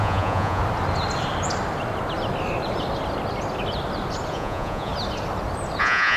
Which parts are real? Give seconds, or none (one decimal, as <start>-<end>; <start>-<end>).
0.6-4.3; 4.9-5.8